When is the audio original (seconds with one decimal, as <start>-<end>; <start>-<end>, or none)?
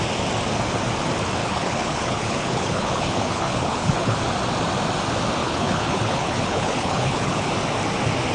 0.0-1.4; 4.2-5.4; 7.5-8.3